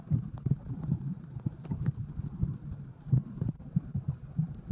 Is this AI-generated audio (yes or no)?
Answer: no